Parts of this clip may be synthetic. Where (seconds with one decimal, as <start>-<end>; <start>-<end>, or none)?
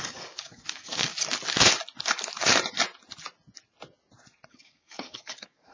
0.0-1.1; 4.5-5.7